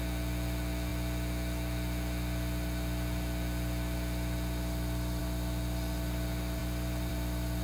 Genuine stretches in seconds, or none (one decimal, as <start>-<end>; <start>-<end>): 0.0-6.6; 7.1-7.6

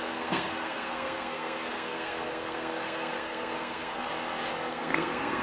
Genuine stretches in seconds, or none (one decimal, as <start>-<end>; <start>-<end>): 4.1-4.7

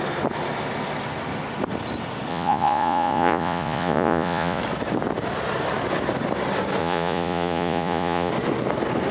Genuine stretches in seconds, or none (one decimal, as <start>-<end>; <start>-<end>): 0.0-2.3; 4.6-6.8; 8.3-9.1

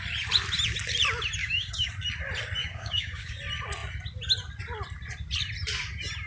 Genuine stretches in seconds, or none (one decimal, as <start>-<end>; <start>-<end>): 0.0-1.4; 1.9-2.6; 3.4-6.3

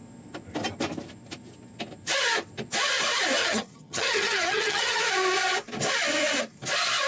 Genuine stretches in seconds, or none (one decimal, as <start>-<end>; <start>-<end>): 0.0-3.4; 5.0-7.1

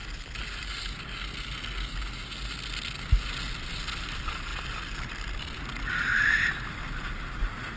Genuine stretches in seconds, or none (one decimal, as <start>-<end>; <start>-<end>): 0.7-4.5; 6.9-7.8